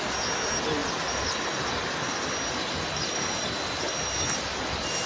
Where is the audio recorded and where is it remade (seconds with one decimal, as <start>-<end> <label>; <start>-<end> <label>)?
0.0-5.1 recorded